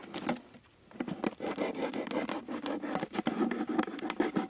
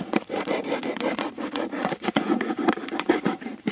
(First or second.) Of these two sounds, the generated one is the second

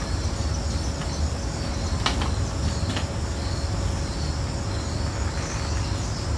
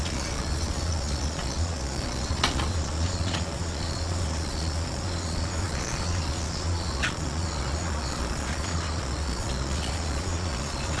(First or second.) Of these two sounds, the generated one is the second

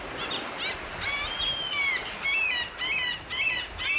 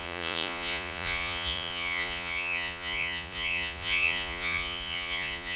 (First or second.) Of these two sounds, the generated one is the second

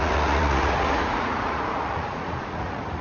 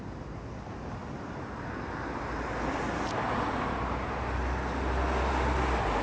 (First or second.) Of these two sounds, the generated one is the first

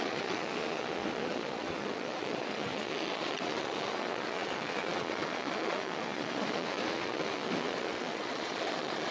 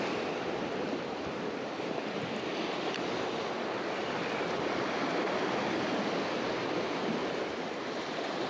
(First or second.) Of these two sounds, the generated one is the first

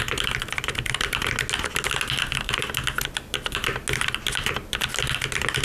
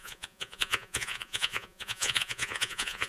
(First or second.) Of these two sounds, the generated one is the second